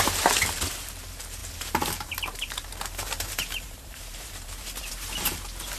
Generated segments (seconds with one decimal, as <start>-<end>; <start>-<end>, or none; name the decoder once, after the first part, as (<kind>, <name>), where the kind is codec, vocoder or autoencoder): 0.0-5.8 (vocoder, BigVGAN v2)